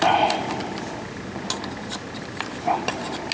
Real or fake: real